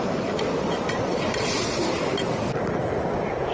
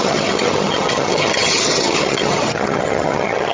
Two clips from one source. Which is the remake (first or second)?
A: second